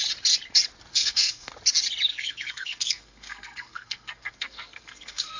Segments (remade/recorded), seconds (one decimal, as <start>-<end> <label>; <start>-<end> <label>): 0.0-0.9 recorded; 0.9-1.5 remade; 1.5-2.1 recorded; 2.1-5.4 remade

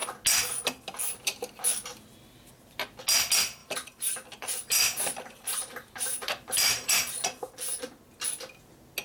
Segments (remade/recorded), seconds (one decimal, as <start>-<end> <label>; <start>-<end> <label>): 0.0-3.6 recorded; 3.6-7.1 remade; 7.1-9.0 recorded